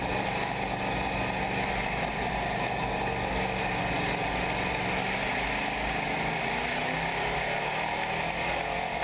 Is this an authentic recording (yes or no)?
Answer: yes